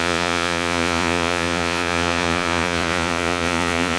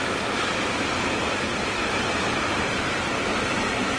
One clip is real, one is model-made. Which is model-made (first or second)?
first